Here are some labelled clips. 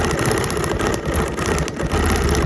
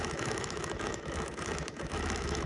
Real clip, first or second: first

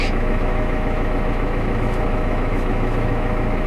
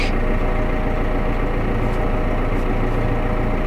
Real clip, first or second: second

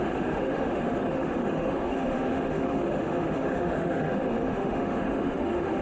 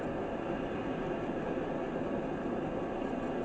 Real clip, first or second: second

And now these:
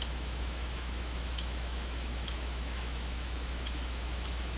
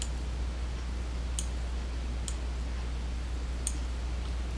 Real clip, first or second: second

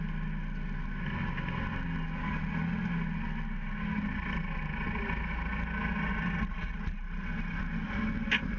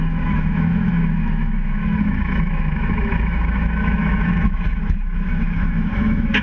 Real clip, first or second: first